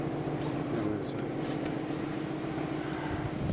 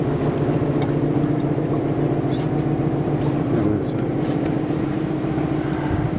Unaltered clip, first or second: first